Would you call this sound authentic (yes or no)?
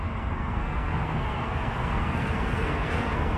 no